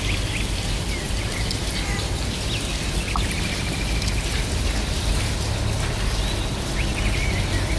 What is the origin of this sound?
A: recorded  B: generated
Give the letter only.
A